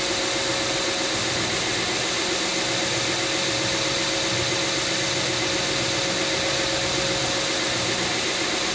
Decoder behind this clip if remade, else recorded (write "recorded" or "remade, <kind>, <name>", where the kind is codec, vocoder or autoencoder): recorded